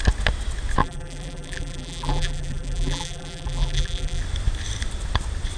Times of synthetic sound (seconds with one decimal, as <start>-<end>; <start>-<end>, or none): 0.8-4.2